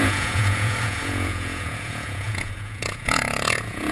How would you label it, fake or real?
fake